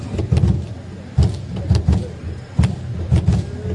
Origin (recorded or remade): recorded